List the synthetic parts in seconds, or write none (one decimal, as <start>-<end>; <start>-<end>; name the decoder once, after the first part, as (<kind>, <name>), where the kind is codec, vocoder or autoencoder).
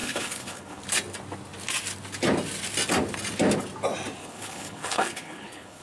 0.0-0.8 (codec, HILCodec); 4.2-5.8